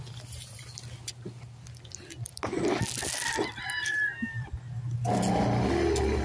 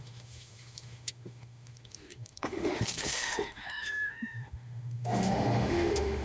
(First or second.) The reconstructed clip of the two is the second